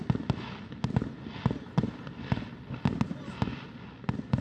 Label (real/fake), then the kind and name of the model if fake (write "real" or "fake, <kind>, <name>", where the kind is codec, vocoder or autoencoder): real